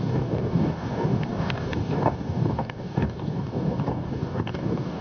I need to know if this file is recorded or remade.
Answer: remade